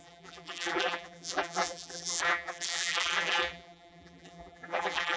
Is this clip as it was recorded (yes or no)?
no